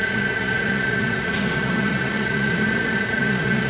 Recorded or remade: remade